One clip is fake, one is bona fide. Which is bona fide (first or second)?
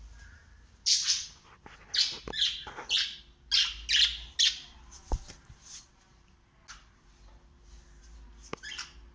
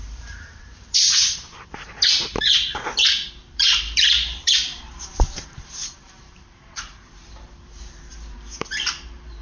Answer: first